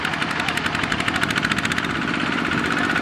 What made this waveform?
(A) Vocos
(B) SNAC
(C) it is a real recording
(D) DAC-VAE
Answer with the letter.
C